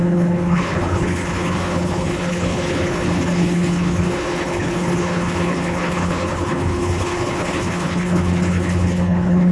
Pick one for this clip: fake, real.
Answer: fake